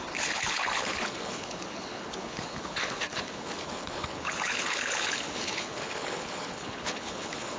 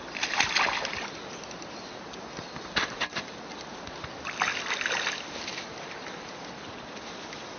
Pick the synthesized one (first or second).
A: first